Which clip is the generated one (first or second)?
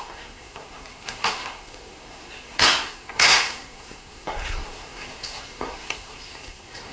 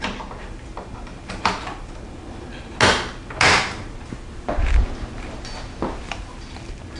first